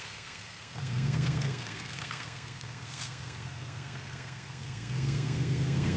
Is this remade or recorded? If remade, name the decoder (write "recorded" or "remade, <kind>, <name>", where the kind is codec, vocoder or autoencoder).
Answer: remade, codec, SNAC